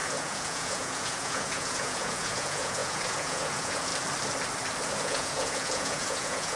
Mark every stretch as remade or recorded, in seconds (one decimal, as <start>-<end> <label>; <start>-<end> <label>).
0.0-3.9 remade; 3.9-5.0 recorded; 5.0-6.6 remade